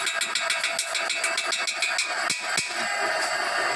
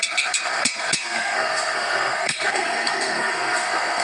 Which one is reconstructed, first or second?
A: second